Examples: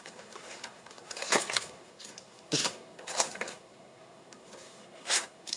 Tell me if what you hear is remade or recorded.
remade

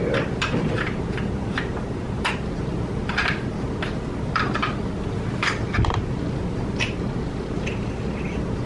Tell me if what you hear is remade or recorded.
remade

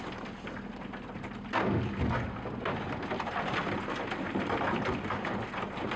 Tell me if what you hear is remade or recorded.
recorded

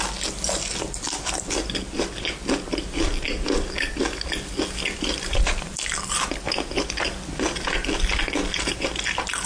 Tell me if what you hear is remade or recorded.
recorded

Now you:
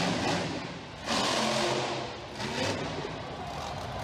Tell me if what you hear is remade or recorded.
recorded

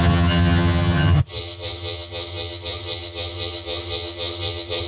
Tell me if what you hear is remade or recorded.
remade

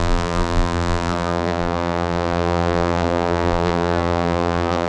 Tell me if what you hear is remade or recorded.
remade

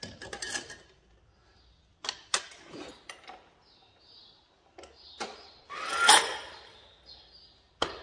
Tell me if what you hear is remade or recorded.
recorded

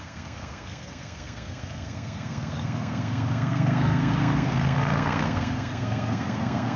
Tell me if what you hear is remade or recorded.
remade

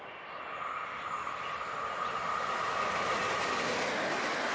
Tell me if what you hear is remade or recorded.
recorded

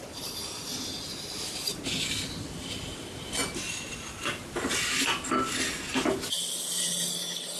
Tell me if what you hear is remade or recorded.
recorded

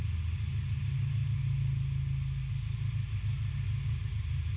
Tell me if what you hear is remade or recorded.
recorded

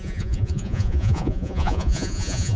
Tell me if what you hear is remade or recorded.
remade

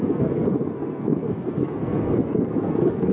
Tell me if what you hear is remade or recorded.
remade